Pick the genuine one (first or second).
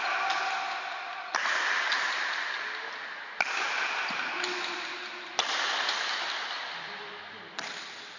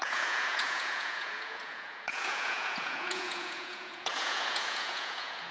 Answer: first